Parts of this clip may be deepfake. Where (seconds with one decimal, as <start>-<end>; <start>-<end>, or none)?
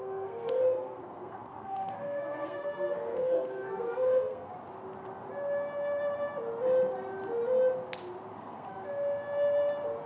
0.0-4.5; 8.3-8.8